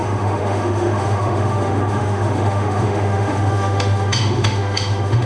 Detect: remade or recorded remade